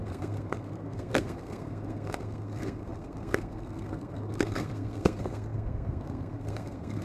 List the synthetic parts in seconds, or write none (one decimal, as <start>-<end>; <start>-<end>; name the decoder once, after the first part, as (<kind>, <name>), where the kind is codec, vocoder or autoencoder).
0.0-7.0 (codec, SNAC)